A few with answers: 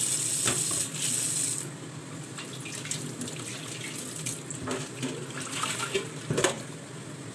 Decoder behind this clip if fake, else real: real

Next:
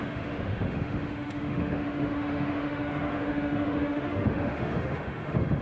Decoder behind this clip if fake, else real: fake, autoencoder, DAC-VAE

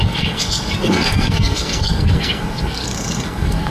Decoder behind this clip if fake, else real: fake, codec, SNAC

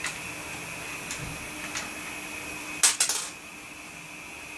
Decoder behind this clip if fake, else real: real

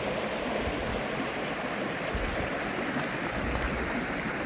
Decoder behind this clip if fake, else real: real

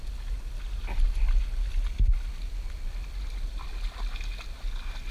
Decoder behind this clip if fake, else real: real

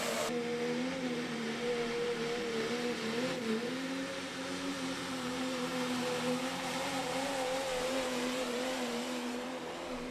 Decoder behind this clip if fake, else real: fake, vocoder, BigVGAN v2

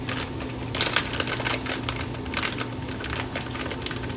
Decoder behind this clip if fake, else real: real